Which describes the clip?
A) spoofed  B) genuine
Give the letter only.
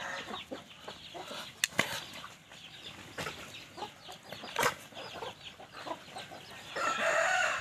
B